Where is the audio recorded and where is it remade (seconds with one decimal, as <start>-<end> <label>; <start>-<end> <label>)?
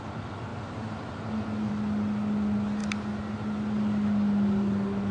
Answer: 0.0-5.1 recorded